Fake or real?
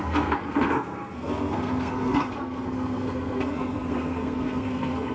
fake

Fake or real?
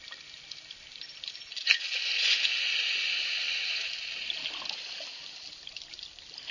real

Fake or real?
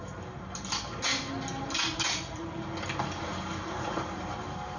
real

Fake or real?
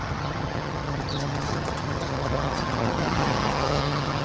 fake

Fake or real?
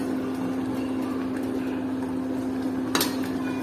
real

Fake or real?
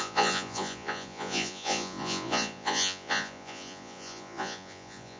fake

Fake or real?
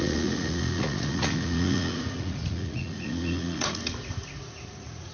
fake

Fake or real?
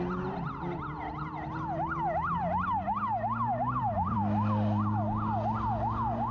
real